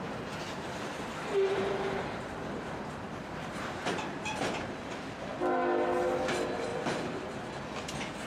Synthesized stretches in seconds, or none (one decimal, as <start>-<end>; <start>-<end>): 1.5-4.8; 6.7-7.5